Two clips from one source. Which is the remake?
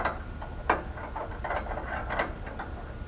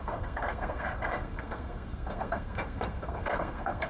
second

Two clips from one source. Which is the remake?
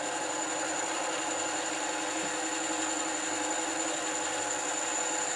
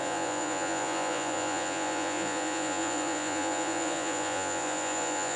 second